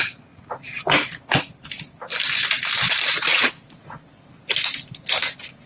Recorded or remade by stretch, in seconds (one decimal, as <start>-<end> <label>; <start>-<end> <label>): 0.0-5.7 recorded